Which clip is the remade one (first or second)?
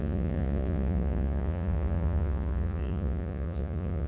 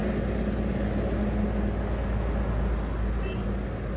first